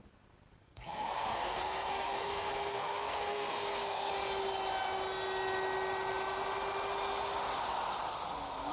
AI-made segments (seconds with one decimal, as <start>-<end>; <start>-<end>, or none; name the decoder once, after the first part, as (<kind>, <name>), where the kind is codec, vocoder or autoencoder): 0.6-4.1 (codec, SNAC)